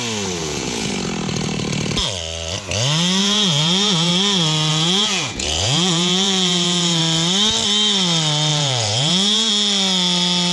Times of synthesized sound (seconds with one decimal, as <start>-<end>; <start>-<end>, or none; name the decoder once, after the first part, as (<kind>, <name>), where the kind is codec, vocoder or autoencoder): 0.4-0.9 (vocoder, Vocos); 3.2-4.1; 4.7-7.0; 8.5-9.5